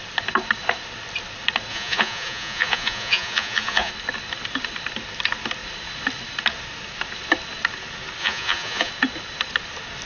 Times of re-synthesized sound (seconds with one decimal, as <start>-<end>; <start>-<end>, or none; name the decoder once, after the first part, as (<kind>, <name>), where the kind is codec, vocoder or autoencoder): 1.7-3.9 (vocoder, Vocos); 8.2-8.9